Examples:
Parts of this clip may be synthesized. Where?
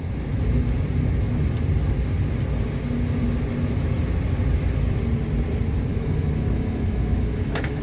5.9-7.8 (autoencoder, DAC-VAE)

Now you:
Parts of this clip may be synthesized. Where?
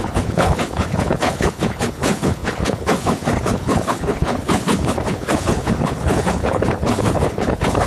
0.0-7.9 (codec, HILCodec)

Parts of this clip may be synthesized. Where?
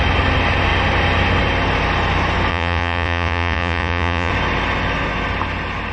2.5-4.3 (vocoder, Vocos)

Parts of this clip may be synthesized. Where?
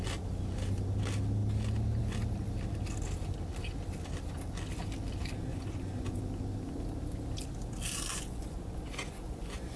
5.5-6.2 (vocoder, Vocos); 8.1-9.8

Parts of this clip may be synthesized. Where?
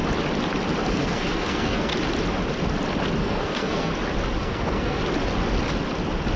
0.9-1.9 (codec, SNAC); 3.2-3.9; 4.4-5.0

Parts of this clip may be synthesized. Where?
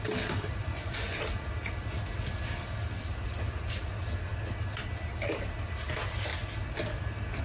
0.7-1.2 (vocoder, Vocos)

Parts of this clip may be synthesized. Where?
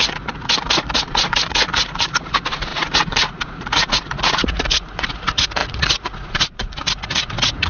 0.0-7.7 (vocoder, Vocos)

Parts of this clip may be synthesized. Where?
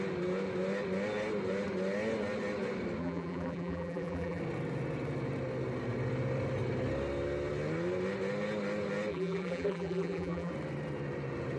3.0-4.4 (vocoder, BigVGAN v2); 9.1-10.5